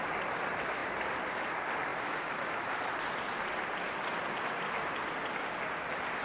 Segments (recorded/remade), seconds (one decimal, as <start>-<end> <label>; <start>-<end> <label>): 0.0-0.8 recorded; 0.8-1.5 remade; 1.5-1.9 recorded; 1.9-5.6 remade; 5.6-6.2 recorded